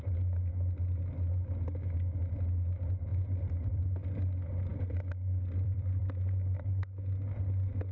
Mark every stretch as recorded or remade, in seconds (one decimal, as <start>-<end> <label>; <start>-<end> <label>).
0.0-3.1 recorded; 3.1-3.8 remade; 3.8-4.7 recorded; 4.7-6.0 remade; 6.0-7.9 recorded